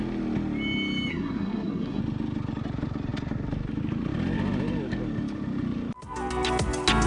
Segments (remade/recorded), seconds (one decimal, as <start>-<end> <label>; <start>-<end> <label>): 0.0-1.1 recorded; 1.1-2.0 remade; 2.0-7.1 recorded

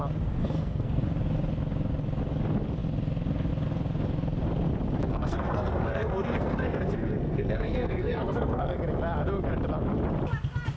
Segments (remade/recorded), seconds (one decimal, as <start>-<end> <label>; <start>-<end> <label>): 0.0-0.4 recorded; 0.4-1.0 remade; 1.0-5.1 recorded; 5.1-8.8 remade; 8.8-10.8 recorded

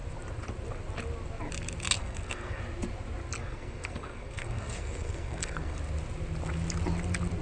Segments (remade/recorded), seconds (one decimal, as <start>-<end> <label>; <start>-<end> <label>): 0.0-2.0 recorded; 2.0-2.6 remade; 2.6-3.4 recorded; 3.4-5.8 remade; 5.8-7.4 recorded

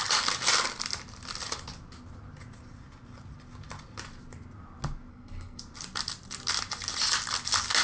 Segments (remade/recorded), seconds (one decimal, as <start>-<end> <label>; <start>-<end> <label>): 0.0-5.1 recorded; 5.1-5.6 remade; 5.6-7.8 recorded

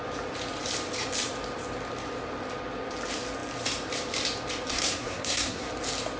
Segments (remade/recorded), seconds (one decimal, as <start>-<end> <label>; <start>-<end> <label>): 0.0-4.7 recorded; 4.7-5.7 remade; 5.7-6.2 recorded

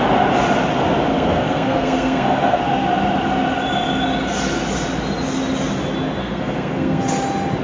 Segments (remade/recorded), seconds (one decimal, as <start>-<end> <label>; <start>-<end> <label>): 0.0-1.1 recorded; 1.1-2.6 remade; 2.6-6.2 recorded; 6.2-7.0 remade; 7.0-7.6 recorded

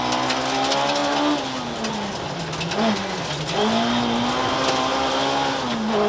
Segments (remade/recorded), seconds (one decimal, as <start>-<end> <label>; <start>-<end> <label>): 0.0-6.1 recorded